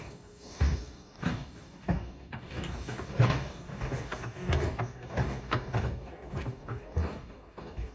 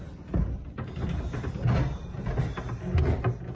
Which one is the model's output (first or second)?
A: first